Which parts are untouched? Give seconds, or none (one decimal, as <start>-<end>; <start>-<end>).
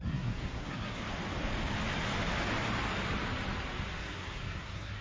1.0-4.0